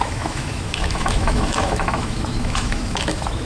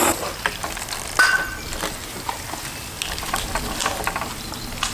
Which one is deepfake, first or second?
first